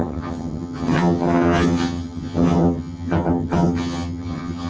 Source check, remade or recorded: remade